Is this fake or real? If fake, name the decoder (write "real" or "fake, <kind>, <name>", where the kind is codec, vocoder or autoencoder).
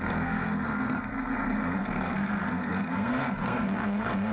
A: fake, codec, SNAC